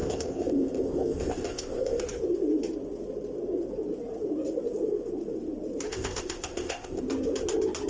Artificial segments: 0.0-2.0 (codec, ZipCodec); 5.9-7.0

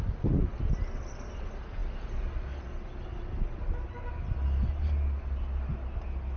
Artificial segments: none